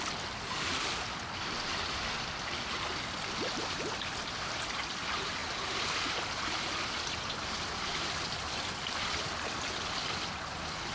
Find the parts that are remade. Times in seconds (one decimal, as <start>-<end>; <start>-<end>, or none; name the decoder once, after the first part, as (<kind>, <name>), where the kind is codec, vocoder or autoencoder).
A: none